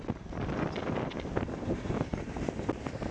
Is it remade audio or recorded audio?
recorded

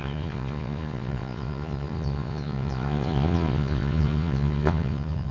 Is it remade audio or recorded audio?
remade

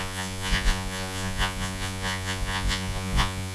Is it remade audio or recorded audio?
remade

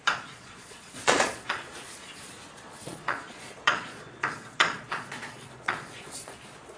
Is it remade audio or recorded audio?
remade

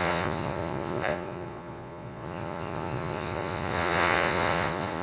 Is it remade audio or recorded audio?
remade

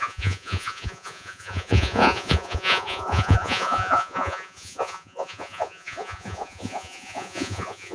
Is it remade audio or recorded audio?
remade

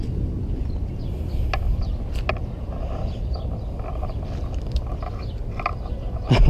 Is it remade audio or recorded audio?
recorded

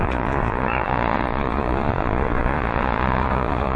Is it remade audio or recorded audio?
remade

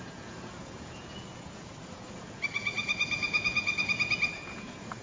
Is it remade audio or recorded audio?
remade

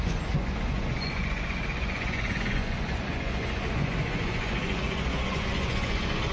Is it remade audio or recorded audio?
remade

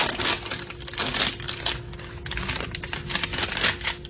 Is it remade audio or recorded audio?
recorded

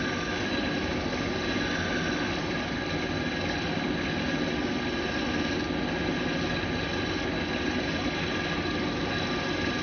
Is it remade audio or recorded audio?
recorded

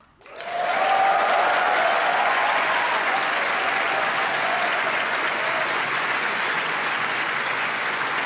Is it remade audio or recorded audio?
remade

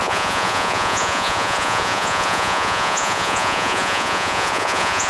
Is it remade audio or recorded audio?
remade